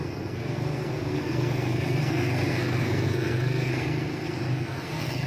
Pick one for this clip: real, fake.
fake